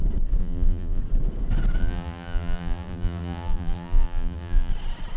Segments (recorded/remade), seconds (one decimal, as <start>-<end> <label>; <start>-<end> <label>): 0.0-0.4 recorded; 0.4-1.0 remade; 1.0-1.8 recorded; 1.8-4.7 remade; 4.7-5.2 recorded